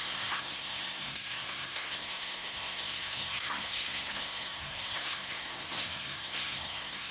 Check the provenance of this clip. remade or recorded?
remade